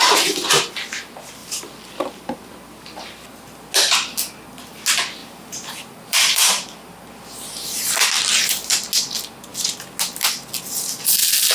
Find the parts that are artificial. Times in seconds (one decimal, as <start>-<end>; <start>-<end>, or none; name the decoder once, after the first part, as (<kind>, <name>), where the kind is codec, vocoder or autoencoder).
1.4-2.2 (vocoder, BigVGAN v2); 5.2-6.4